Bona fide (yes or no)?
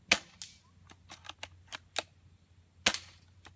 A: yes